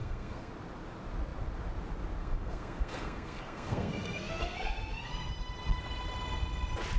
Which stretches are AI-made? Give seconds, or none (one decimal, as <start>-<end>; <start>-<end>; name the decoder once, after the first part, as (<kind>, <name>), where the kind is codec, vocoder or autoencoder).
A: 0.0-0.5 (codec, SNAC); 2.2-5.3